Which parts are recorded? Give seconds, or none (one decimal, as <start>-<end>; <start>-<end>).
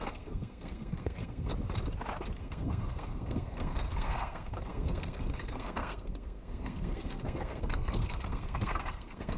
1.5-2.4